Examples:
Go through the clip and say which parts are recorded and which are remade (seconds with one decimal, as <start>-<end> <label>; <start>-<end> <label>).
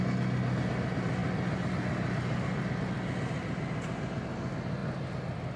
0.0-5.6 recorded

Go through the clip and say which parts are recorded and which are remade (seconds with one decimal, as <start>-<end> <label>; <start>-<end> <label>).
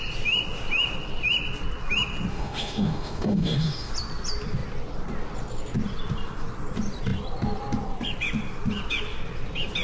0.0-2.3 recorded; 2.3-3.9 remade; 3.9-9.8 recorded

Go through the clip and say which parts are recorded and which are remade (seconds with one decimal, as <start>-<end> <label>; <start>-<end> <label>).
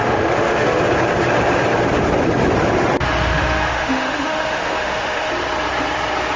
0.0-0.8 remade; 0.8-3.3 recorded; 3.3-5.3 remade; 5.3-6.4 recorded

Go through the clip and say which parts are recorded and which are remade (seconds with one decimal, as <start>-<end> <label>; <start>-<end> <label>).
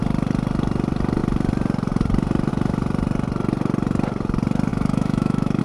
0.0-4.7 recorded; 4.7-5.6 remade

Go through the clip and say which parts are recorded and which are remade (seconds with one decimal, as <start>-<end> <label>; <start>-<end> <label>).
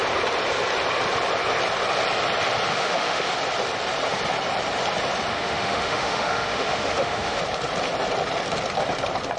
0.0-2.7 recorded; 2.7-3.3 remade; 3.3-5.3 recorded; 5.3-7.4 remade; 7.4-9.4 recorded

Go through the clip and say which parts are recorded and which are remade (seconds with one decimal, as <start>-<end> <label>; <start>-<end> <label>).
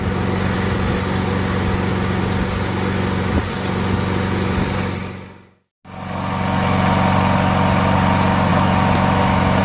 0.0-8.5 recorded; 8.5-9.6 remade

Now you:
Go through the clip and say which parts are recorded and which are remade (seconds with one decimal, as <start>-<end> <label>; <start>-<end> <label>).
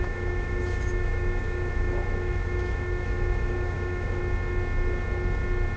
0.0-4.2 remade; 4.2-5.8 recorded